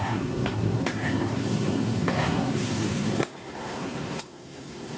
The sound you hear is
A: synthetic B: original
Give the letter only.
A